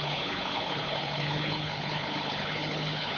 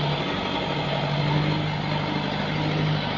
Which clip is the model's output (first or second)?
first